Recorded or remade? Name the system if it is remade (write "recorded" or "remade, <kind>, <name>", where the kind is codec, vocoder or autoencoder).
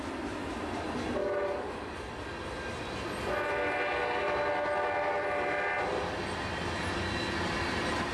recorded